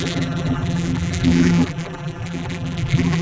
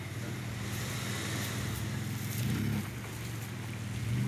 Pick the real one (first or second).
second